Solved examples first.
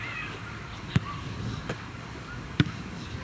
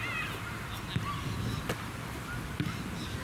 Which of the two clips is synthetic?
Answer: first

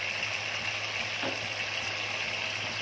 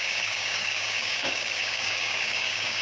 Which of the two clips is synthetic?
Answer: second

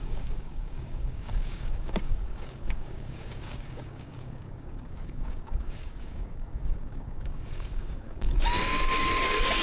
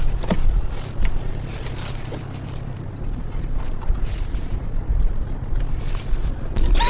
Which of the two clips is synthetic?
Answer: first